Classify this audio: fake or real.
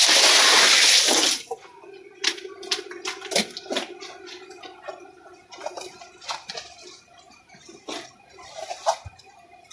real